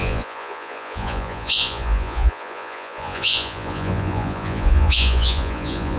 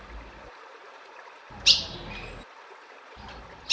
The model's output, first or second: first